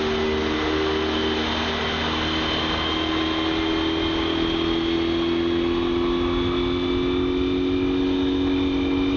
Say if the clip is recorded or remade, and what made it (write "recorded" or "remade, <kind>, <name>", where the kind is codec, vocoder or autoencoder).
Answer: recorded